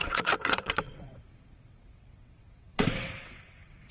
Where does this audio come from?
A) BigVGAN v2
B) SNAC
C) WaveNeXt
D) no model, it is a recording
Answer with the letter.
C